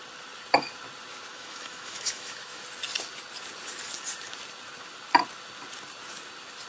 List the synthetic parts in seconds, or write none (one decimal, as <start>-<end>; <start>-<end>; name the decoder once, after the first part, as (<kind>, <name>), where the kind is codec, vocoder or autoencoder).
1.3-2.6 (autoencoder, DAC-VAE)